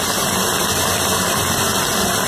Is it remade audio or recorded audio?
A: recorded